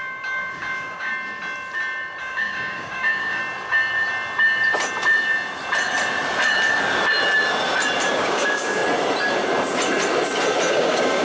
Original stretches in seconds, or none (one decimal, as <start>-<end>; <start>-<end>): 1.1-2.2; 3.4-8.1; 8.8-10.7